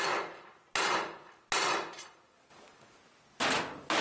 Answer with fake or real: real